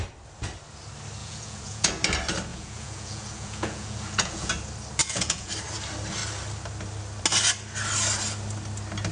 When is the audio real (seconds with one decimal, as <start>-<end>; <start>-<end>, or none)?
0.0-1.2; 1.9-2.5; 4.5-5.0; 5.5-9.1